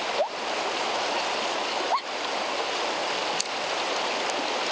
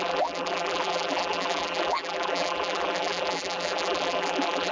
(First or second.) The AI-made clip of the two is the second